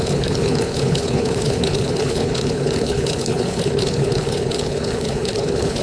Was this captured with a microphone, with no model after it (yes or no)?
no